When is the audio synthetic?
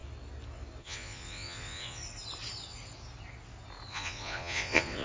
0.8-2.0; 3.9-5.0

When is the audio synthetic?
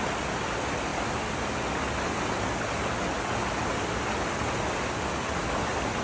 none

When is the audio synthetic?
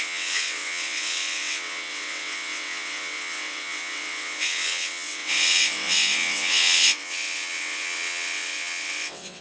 0.0-9.4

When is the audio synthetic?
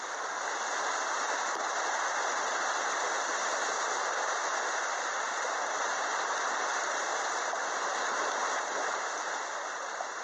6.7-7.6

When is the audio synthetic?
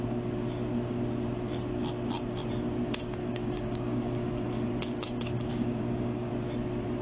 3.2-4.7; 5.5-6.3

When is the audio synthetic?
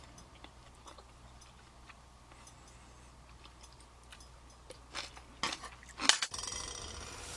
none